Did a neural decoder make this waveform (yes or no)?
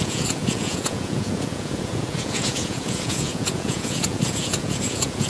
yes